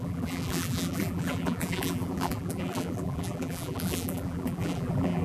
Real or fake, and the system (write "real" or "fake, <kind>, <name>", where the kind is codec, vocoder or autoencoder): fake, vocoder, BigVGAN v2